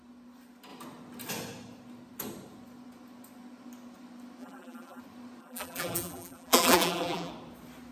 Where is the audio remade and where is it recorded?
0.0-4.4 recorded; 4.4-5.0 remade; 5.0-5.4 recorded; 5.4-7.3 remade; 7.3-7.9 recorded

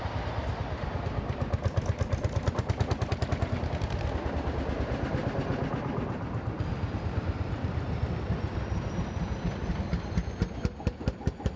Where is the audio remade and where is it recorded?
0.0-11.6 recorded

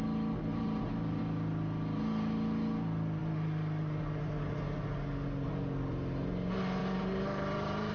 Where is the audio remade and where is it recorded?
0.0-0.5 recorded; 0.5-1.2 remade; 1.2-6.8 recorded; 6.8-7.9 remade

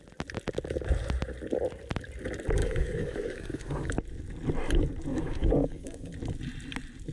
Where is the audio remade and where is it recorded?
0.0-2.6 recorded; 2.6-3.9 remade; 3.9-5.1 recorded; 5.1-6.1 remade; 6.1-7.1 recorded

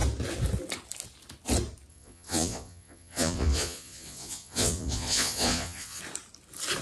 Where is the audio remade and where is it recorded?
0.0-1.9 recorded; 1.9-6.0 remade; 6.0-6.8 recorded

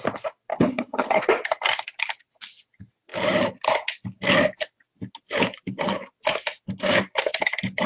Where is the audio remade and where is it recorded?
0.0-0.5 recorded; 0.5-1.2 remade; 1.2-7.9 recorded